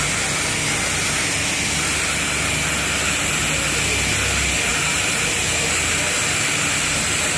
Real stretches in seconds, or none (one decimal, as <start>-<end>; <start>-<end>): 0.0-4.7; 6.9-7.4